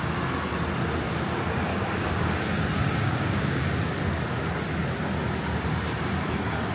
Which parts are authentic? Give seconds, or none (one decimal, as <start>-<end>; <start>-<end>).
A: 0.0-1.7; 2.3-3.0; 3.7-6.7